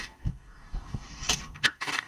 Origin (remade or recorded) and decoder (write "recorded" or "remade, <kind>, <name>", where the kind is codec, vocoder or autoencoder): remade, codec, DAC